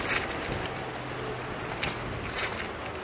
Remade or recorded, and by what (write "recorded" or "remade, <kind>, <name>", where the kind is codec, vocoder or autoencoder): recorded